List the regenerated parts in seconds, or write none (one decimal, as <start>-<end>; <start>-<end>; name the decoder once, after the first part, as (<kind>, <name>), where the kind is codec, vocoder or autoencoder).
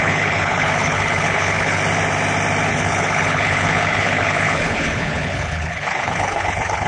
0.0-1.8 (codec, HILCodec); 2.7-6.9